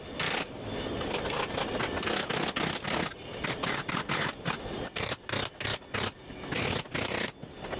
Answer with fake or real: real